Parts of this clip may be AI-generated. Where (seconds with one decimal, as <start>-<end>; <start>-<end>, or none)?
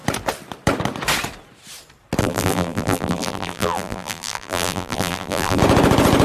2.2-5.6